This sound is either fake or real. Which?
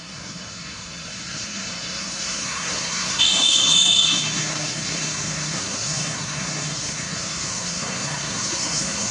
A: fake